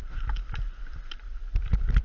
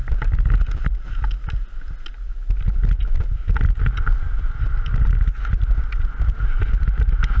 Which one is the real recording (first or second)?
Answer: second